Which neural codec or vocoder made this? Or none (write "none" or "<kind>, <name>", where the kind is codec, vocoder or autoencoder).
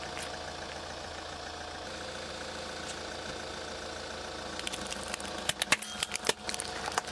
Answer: none